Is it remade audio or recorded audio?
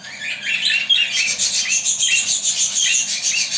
recorded